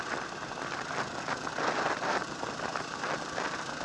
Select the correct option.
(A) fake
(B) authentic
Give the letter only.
B